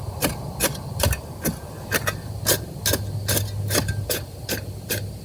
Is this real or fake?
real